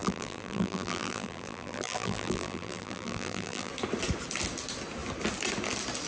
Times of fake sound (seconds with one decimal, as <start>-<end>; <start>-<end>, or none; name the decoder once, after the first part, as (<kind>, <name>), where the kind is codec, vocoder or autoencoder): 0.0-3.7 (vocoder, BigVGAN v2)

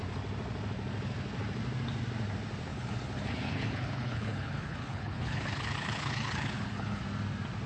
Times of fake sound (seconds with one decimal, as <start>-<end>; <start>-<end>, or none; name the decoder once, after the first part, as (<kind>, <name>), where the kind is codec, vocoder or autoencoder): 2.7-7.0 (codec, HILCodec)

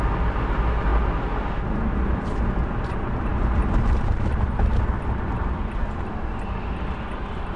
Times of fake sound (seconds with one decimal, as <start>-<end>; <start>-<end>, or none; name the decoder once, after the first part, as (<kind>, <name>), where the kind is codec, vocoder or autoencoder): none